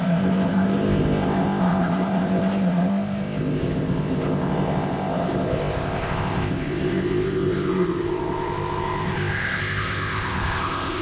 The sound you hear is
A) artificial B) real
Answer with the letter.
A